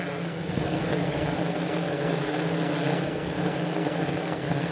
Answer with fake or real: fake